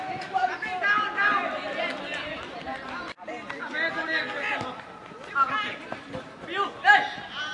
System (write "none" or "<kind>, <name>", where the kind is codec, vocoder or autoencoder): none